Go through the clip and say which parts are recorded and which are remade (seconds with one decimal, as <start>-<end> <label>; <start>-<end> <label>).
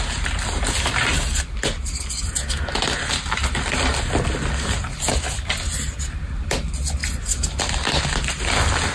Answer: 0.0-8.9 recorded